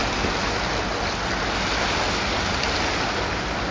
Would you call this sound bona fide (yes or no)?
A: yes